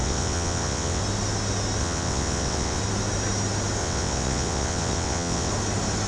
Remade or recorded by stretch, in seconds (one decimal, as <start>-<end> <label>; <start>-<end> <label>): 0.0-1.0 remade; 1.0-1.8 recorded; 1.8-2.8 remade; 2.8-3.8 recorded; 3.8-5.5 remade; 5.5-6.1 recorded